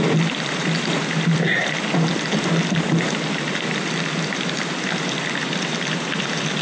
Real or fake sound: fake